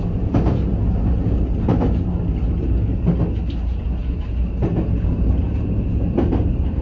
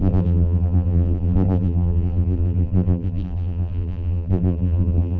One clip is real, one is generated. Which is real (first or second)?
first